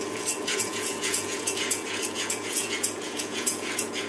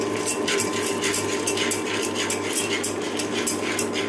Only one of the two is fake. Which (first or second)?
first